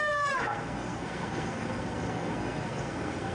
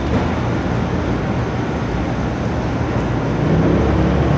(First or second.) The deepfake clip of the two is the first